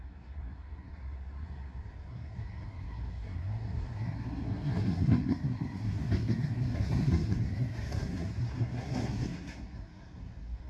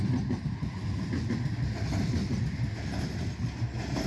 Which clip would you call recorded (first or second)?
second